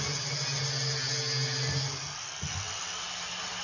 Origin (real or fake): real